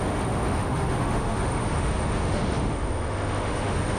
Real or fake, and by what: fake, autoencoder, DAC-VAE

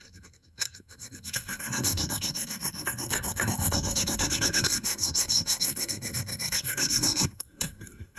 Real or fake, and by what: fake, codec, SNAC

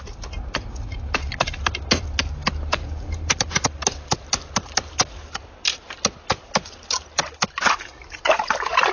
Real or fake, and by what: real